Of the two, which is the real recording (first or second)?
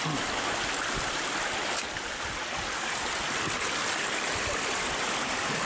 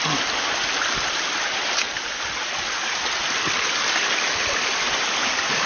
first